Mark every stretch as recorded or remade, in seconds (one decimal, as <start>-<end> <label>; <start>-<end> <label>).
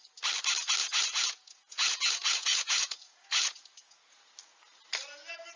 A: 0.0-0.8 recorded; 0.8-4.2 remade; 4.2-5.6 recorded